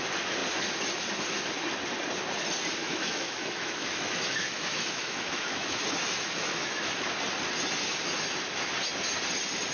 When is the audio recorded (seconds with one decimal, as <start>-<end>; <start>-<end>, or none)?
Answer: 0.0-2.8; 6.9-9.7

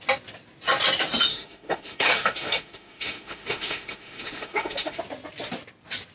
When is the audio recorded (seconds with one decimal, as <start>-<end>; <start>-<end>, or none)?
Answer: 0.0-1.3; 5.0-6.1

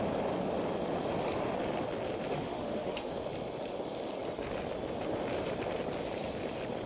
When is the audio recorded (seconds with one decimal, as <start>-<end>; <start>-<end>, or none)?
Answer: 0.0-2.3; 3.1-6.9

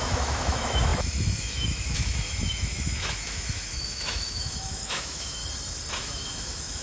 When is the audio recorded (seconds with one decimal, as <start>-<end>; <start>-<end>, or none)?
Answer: 5.4-5.9

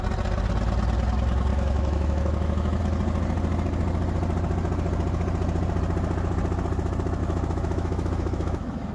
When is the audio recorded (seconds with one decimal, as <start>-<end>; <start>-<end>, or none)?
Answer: 0.0-1.5; 2.8-7.2

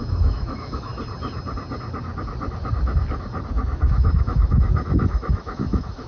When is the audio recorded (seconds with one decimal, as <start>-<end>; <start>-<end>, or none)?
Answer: 0.9-3.5

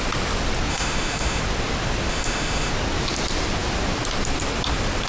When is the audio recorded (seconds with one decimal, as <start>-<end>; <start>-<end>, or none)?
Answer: 0.0-0.7; 1.4-2.1; 2.7-5.1